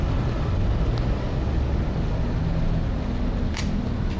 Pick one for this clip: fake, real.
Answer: real